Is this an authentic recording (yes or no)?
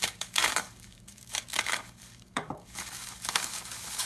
no